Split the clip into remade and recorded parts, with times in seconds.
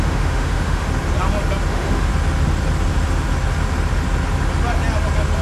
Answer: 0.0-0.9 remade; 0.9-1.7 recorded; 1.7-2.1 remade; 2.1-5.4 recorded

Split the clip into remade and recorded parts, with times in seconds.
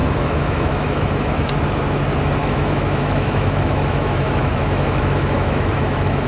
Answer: 0.0-1.5 remade; 1.5-2.4 recorded; 2.4-6.3 remade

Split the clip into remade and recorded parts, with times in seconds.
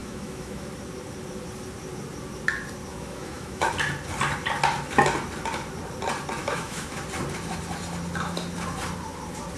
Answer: 0.0-0.7 remade; 0.7-2.9 recorded; 2.9-3.7 remade; 3.7-6.4 recorded; 6.4-7.0 remade; 7.0-9.6 recorded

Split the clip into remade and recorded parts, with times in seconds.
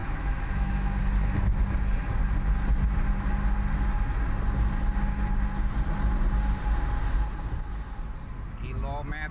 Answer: 0.0-1.0 remade; 1.0-9.3 recorded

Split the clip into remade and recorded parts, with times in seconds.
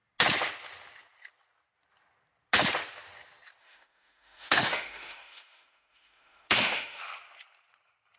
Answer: 0.0-3.6 recorded; 3.6-7.0 remade; 7.0-8.2 recorded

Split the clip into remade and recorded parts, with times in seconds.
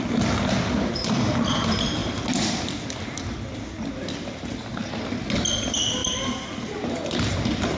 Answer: 0.0-7.8 recorded